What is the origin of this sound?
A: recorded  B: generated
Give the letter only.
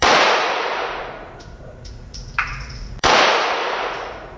B